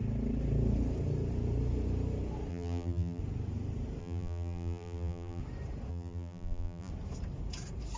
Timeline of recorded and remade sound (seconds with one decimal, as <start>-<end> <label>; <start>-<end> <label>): 0.0-2.5 recorded; 2.5-3.2 remade; 3.2-4.0 recorded; 4.0-5.4 remade; 5.4-5.9 recorded; 5.9-6.9 remade; 6.9-8.0 recorded